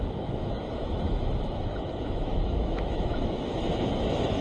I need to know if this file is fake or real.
fake